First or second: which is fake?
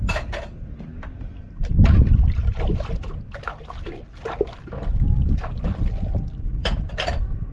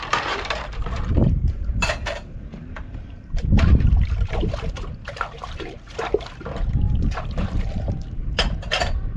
second